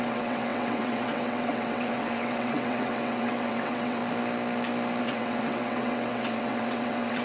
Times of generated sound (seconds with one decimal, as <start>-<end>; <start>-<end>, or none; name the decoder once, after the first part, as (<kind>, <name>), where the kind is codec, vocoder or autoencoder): 0.0-4.0 (vocoder, WaveNeXt); 5.0-7.2